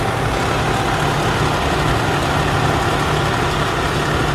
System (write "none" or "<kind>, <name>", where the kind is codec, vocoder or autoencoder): none